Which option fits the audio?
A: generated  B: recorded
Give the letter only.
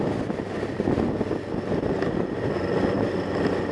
B